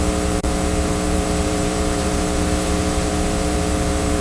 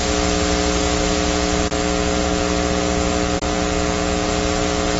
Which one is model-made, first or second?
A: first